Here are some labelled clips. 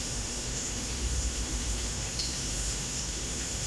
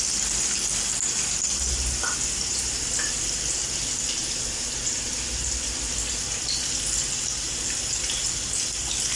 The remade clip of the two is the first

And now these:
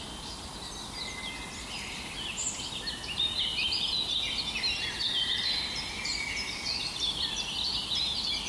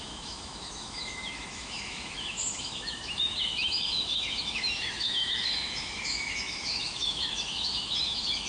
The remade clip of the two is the second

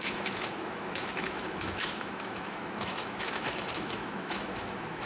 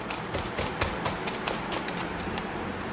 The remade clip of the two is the first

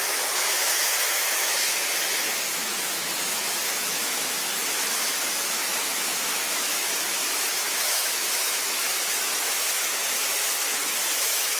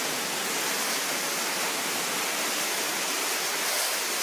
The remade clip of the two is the first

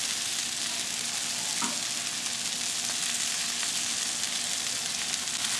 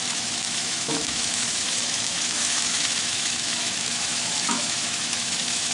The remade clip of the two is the second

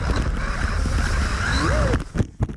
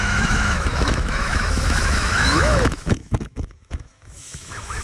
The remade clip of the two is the second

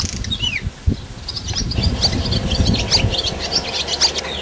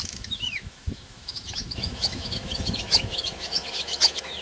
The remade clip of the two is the second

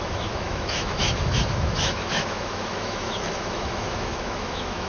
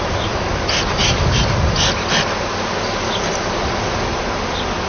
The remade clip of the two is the first